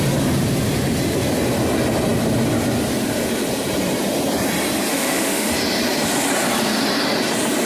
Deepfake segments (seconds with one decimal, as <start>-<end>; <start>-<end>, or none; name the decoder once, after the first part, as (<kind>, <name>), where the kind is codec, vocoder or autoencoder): 4.9-5.5 (autoencoder, DAC-VAE)